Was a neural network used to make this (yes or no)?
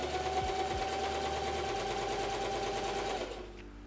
no